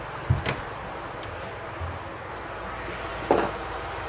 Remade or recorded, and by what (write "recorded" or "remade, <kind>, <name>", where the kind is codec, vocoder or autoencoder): recorded